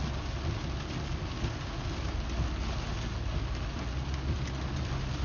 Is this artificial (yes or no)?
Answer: no